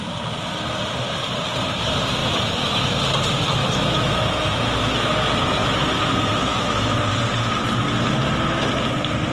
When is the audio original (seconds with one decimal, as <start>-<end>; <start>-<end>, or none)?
0.0-2.2; 3.0-3.6; 5.0-5.6; 7.0-9.3